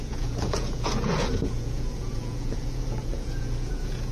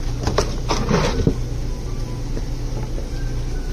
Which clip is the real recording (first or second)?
second